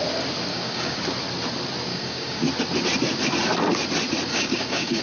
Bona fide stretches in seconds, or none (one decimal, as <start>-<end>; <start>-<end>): 0.0-0.5; 1.0-1.9; 2.4-4.3